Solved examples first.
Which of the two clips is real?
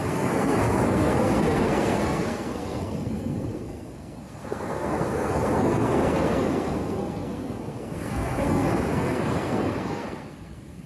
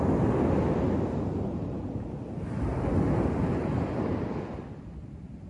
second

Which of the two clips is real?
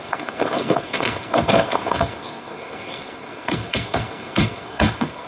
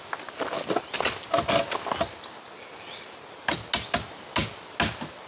second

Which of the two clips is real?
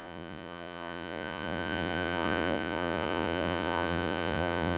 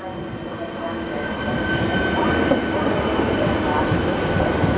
second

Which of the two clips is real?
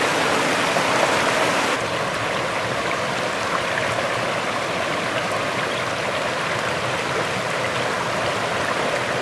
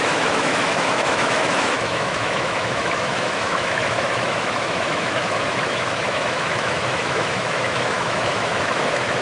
first